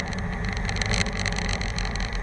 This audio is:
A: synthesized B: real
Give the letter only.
B